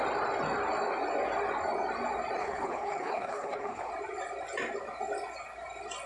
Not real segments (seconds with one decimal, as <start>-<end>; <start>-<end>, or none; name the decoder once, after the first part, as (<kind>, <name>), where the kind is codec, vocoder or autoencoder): 2.4-3.9 (codec, HILCodec)